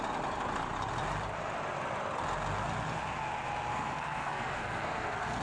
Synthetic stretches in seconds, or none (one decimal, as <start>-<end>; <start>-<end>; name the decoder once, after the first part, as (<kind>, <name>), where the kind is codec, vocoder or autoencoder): 3.7-5.4 (codec, SNAC)